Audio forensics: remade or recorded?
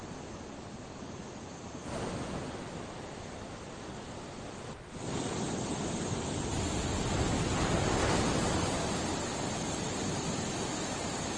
recorded